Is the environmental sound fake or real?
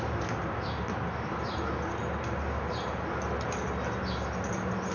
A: real